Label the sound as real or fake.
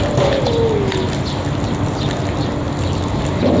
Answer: real